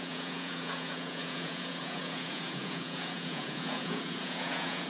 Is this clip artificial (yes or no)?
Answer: yes